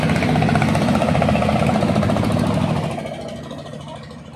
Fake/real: real